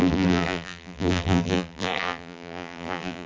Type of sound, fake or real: fake